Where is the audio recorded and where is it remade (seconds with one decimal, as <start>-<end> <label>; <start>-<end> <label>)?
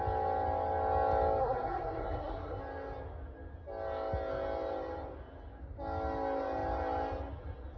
0.0-1.4 recorded; 1.4-2.6 remade; 2.6-7.8 recorded